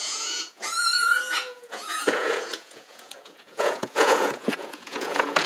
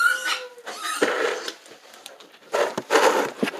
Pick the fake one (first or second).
first